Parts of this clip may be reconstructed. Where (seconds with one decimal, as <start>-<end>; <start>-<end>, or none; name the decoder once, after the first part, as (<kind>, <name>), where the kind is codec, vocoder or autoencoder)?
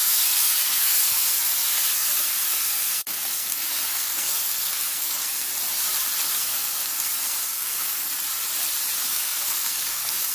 0.0-5.5 (codec, SNAC); 6.3-8.1; 9.1-10.3